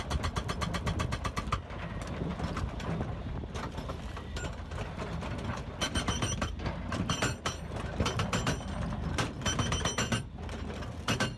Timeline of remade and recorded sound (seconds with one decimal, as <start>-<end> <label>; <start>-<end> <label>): 0.0-2.3 recorded; 2.3-6.5 remade; 6.5-11.4 recorded